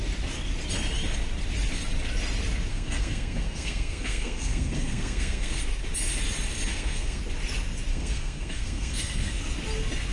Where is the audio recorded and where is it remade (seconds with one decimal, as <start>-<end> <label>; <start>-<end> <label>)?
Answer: 0.0-2.7 recorded; 2.7-5.6 remade; 5.6-6.7 recorded; 6.7-7.2 remade; 7.2-7.9 recorded; 7.9-9.4 remade; 9.4-10.1 recorded